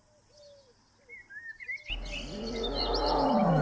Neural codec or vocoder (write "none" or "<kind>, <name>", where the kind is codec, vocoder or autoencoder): none